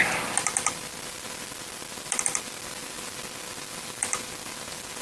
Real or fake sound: real